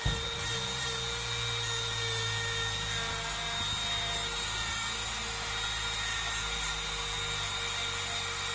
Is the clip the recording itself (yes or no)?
yes